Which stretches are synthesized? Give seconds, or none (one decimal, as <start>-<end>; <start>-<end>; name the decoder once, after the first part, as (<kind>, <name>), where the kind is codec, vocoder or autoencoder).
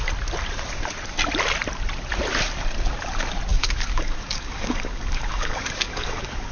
3.5-6.5 (codec, DAC)